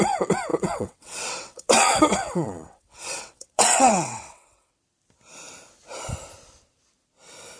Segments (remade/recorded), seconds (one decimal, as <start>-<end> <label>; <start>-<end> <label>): 0.0-0.5 recorded; 0.5-4.7 remade; 4.7-7.6 recorded